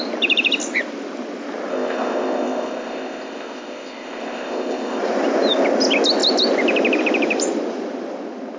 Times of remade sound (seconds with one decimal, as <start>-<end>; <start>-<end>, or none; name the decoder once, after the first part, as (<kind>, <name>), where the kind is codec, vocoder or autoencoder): 1.7-5.0 (codec, ZipCodec)